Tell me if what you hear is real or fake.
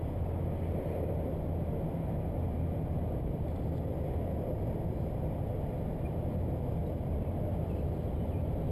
real